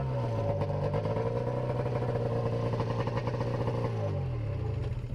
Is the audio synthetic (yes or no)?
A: no